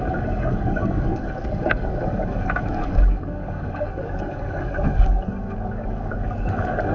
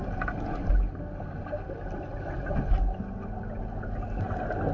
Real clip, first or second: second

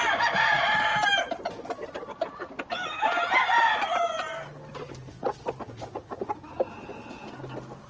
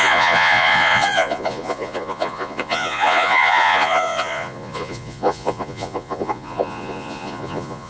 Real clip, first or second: first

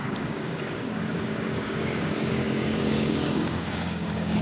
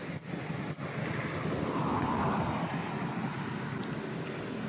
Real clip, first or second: second